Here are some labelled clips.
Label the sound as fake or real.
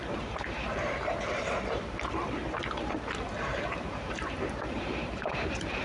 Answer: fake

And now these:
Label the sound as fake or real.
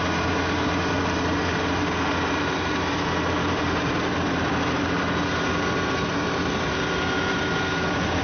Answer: fake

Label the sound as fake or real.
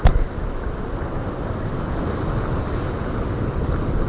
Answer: real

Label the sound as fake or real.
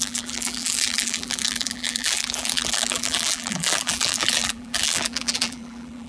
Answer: fake